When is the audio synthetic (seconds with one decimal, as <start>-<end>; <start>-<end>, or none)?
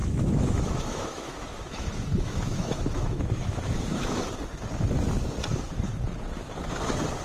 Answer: 0.0-4.2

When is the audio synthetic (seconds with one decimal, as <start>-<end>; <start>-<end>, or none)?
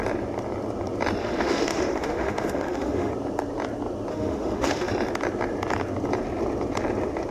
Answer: 1.2-3.1; 4.1-4.9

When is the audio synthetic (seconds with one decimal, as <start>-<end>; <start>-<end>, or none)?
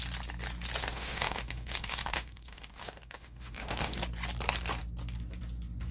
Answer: 0.8-4.0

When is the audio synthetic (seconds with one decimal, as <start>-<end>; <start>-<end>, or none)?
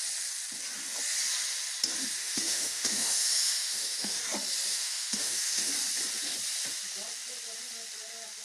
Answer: 2.2-4.2; 4.7-5.7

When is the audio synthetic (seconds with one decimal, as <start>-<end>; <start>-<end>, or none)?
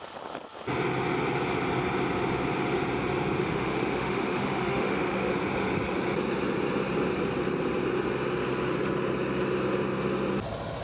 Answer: 3.4-5.3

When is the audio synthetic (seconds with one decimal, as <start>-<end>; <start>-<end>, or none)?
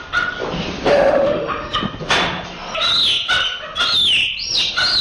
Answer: 0.9-1.8